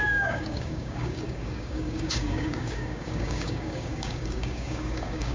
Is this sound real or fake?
fake